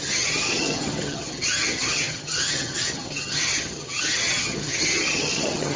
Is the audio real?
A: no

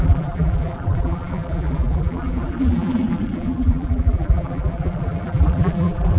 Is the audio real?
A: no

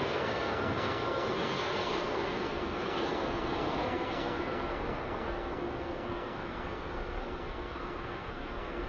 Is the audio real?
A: no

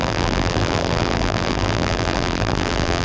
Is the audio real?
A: no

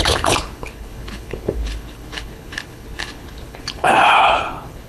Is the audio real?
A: no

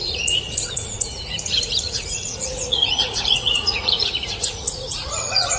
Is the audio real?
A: no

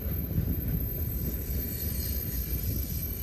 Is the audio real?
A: yes